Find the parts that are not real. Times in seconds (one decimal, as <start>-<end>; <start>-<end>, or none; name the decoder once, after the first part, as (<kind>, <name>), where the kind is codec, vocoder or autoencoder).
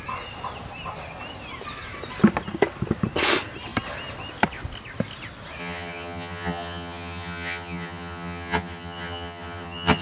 5.6-10.0 (vocoder, HiFi-GAN)